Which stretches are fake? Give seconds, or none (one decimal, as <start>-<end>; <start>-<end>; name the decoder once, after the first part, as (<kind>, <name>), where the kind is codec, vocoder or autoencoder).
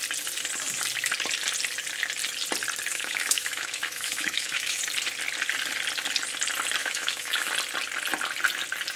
2.9-4.8 (autoencoder, DAC-VAE); 6.8-7.5